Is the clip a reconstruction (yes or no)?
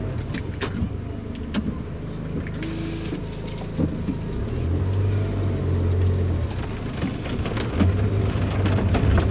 no